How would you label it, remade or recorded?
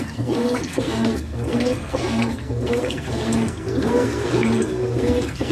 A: remade